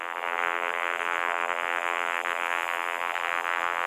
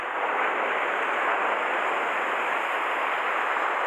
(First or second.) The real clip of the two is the second